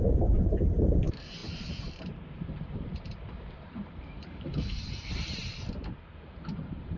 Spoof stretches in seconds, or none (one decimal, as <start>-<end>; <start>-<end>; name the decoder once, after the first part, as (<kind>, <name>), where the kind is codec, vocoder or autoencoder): 0.0-7.0 (vocoder, BigVGAN v2)